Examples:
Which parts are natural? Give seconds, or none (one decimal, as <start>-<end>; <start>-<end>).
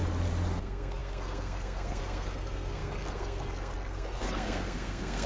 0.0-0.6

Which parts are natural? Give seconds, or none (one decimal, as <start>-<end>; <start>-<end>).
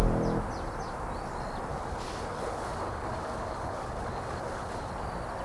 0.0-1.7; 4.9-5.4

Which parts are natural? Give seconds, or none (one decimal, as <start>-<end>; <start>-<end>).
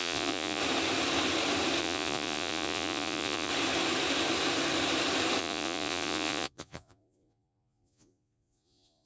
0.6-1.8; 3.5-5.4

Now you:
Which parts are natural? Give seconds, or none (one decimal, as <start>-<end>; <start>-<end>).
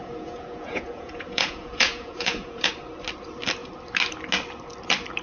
2.7-5.2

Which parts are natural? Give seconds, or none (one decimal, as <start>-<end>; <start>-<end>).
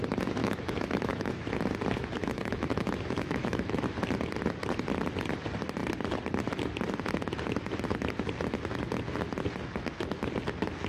0.0-0.4; 1.3-2.2; 3.8-10.9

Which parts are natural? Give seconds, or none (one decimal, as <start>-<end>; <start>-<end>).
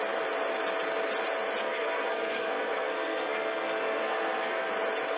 0.0-1.6; 4.7-5.2